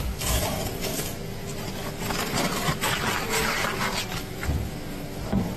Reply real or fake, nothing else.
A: fake